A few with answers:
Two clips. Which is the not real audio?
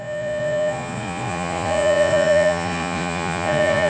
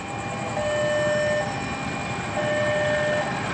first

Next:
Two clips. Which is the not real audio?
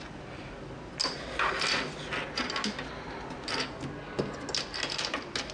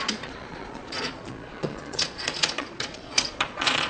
second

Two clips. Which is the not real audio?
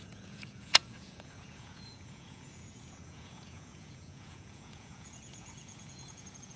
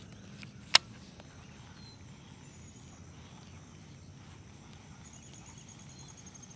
first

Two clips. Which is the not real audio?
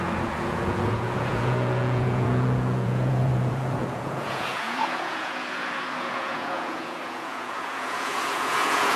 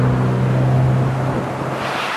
first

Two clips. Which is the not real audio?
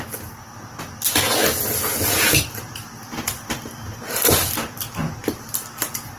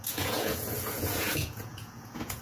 second